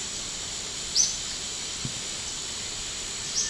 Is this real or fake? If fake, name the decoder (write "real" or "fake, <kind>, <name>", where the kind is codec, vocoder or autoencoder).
real